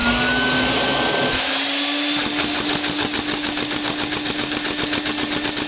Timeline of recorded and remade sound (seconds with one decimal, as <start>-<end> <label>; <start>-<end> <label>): 0.0-5.7 recorded

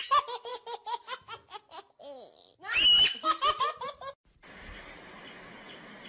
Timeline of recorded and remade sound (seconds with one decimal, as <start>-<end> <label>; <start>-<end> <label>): 0.0-6.1 recorded